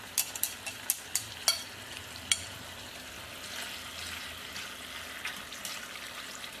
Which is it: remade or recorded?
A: recorded